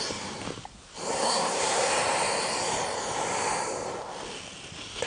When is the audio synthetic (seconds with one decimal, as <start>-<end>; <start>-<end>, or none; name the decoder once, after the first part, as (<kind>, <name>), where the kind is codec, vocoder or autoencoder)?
1.1-1.9 (codec, SNAC)